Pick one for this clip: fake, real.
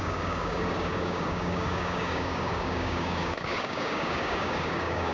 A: fake